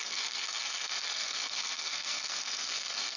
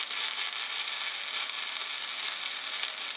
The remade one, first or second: first